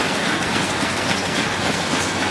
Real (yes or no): no